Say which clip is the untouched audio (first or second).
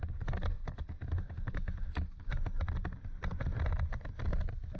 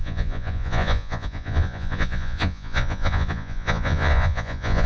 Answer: first